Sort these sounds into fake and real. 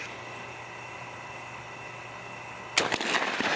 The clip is real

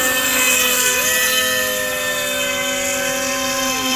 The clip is real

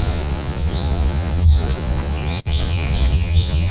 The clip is fake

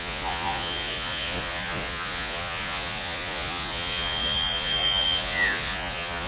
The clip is fake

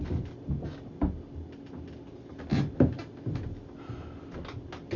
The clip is real